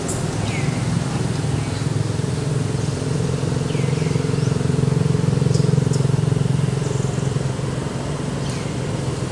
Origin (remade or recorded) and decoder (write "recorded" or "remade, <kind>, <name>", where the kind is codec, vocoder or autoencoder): recorded